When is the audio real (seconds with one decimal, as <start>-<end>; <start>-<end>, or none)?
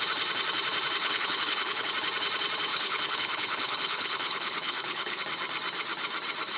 0.0-1.0; 1.9-2.7; 5.2-6.6